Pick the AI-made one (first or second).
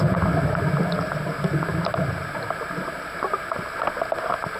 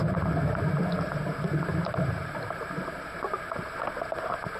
second